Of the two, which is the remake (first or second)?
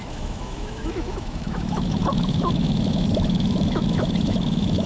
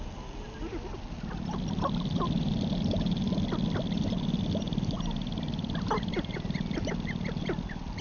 first